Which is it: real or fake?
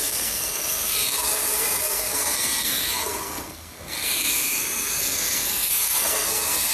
fake